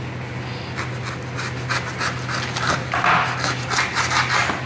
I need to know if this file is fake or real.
real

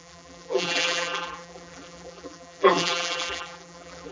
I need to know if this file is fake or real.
fake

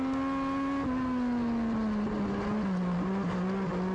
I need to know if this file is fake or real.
real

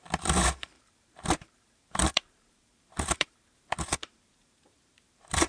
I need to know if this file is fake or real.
fake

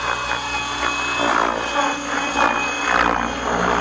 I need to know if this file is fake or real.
real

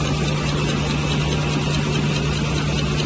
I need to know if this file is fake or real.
real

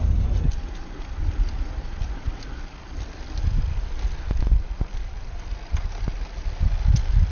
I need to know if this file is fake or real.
real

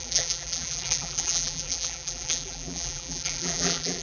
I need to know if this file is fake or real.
fake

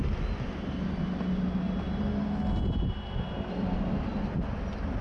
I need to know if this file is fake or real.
real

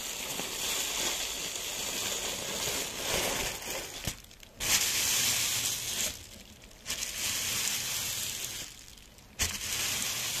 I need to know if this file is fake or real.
real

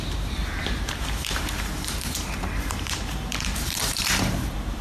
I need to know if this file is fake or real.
fake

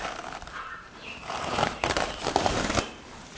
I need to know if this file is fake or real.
fake